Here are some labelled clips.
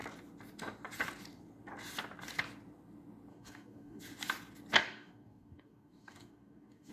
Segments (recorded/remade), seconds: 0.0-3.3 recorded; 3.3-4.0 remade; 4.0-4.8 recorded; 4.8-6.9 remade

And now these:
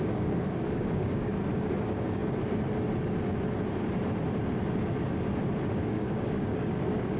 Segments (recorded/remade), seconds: 0.0-1.3 remade; 1.3-1.8 recorded; 1.8-2.2 remade; 2.2-5.7 recorded; 5.7-7.2 remade